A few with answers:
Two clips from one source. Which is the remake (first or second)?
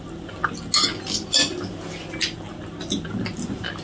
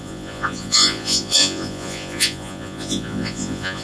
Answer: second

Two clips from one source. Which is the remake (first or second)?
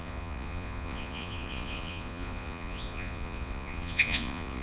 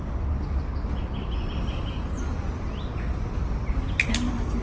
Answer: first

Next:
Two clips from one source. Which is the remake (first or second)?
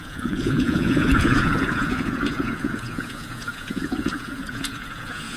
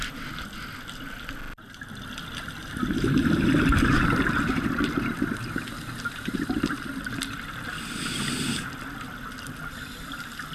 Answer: first